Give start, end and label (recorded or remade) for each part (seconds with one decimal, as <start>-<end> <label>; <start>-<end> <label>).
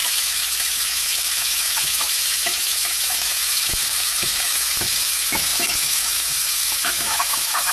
0.0-7.7 remade